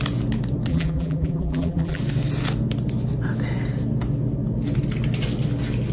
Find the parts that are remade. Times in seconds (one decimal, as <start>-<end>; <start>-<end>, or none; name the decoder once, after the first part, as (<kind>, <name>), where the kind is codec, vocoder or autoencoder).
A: 0.7-2.0 (vocoder, BigVGAN v2)